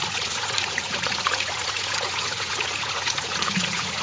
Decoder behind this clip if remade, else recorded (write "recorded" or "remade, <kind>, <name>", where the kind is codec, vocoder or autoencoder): remade, vocoder, Vocos